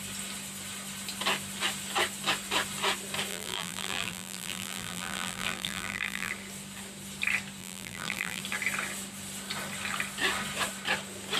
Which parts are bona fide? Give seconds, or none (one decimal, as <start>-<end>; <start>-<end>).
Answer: 0.0-3.3; 6.3-7.6; 8.4-11.4